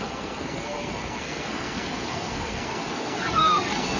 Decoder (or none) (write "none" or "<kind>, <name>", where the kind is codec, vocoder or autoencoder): codec, SNAC